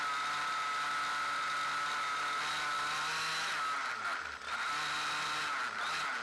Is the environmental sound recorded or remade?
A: recorded